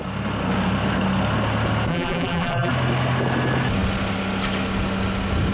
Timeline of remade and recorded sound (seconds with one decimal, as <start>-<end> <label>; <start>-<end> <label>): 0.0-1.9 recorded; 1.9-2.7 remade; 2.7-5.5 recorded